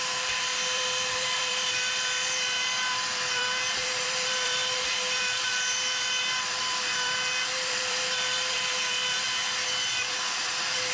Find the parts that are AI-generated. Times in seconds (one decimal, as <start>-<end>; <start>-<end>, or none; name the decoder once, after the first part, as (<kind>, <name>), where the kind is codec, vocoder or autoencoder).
0.0-9.0 (vocoder, BigVGAN v2); 9.9-10.9